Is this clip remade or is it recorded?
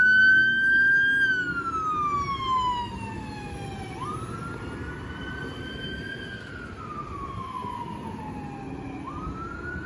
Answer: recorded